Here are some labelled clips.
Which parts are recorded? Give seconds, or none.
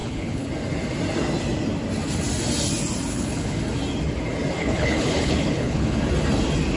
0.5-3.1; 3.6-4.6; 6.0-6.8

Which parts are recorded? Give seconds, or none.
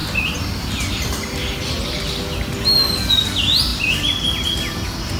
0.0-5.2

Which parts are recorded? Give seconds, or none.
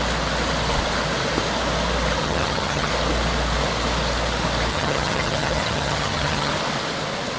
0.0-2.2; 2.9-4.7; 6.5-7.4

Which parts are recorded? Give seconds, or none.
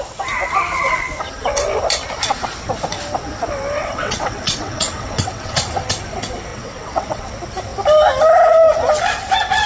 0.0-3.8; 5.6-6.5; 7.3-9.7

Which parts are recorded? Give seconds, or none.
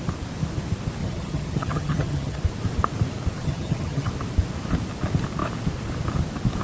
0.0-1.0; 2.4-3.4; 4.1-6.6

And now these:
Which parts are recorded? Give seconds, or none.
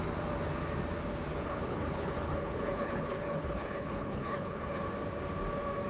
0.0-1.3; 4.8-5.9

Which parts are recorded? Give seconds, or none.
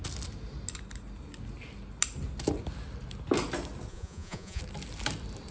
0.0-3.9; 4.6-5.5